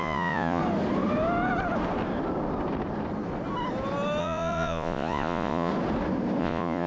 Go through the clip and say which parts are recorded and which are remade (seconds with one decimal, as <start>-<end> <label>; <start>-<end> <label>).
0.0-0.6 remade; 0.6-4.2 recorded; 4.2-5.7 remade; 5.7-6.4 recorded; 6.4-6.9 remade